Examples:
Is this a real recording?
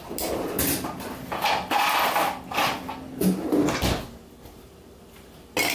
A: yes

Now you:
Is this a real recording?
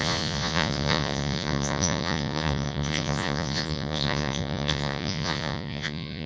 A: no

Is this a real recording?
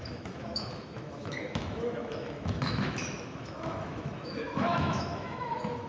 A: no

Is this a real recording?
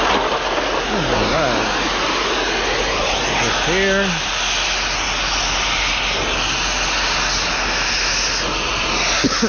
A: yes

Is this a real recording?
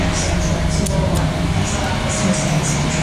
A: yes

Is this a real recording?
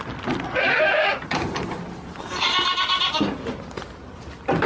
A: yes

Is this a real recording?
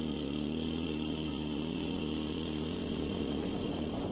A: no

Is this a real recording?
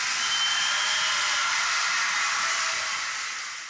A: yes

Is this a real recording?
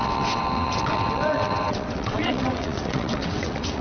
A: no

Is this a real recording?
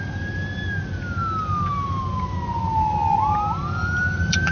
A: yes